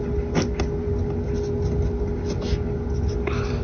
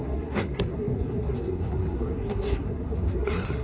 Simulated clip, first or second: second